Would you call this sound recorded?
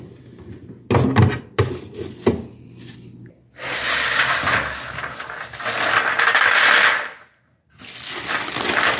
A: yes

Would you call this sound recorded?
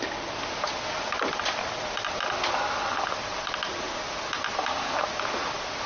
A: yes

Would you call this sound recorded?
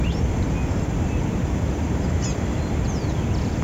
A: yes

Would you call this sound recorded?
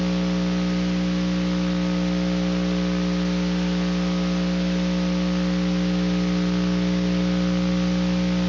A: yes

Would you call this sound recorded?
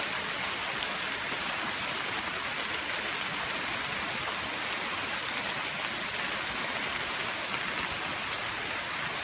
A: yes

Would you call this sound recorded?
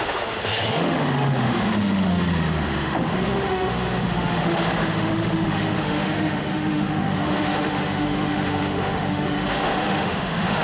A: no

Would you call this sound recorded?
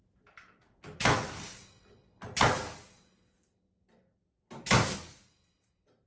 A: yes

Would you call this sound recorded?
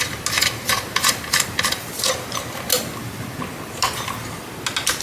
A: yes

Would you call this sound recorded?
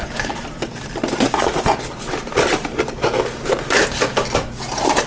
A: yes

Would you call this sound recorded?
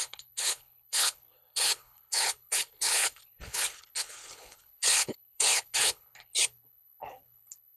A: no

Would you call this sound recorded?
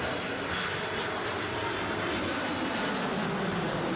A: yes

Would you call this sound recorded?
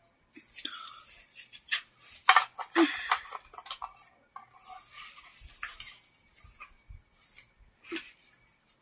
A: yes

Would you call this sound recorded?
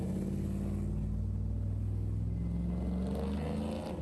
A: yes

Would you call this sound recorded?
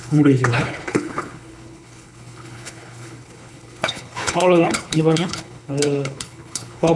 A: no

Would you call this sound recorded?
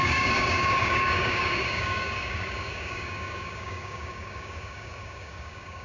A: no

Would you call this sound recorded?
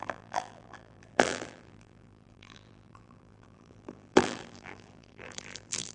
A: no